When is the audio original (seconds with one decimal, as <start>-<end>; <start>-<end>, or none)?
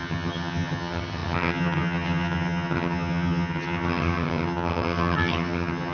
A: none